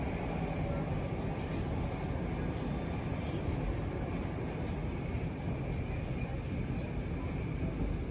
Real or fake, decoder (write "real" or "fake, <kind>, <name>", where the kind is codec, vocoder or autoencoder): real